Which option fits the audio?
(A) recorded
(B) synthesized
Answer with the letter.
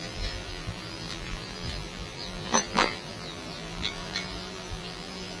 B